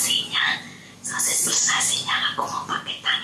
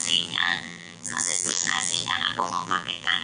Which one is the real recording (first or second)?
first